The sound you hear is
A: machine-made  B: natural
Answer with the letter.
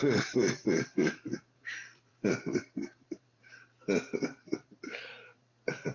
A